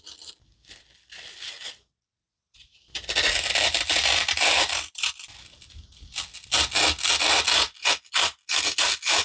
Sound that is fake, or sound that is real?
real